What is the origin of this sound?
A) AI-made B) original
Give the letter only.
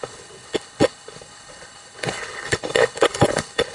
A